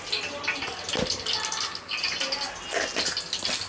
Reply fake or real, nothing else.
real